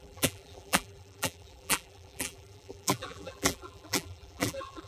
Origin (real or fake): fake